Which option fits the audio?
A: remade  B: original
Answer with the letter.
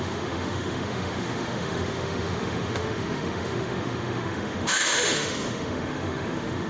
A